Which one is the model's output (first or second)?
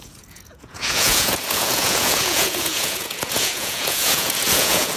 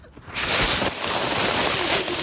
first